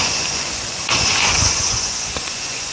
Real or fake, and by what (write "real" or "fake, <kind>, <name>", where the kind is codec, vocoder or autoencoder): fake, vocoder, Vocos